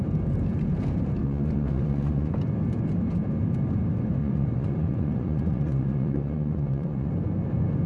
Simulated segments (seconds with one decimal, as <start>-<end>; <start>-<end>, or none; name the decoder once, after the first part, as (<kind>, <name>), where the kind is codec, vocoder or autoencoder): 1.2-2.3 (vocoder, Vocos); 4.2-7.1